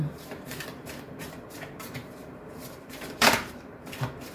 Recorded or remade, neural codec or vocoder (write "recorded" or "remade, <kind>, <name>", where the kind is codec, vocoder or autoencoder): remade, vocoder, BigVGAN v2